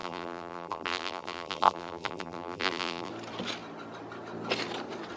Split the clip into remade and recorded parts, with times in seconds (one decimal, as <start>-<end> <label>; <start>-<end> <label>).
0.0-3.1 remade; 3.1-5.2 recorded